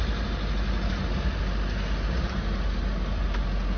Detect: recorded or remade recorded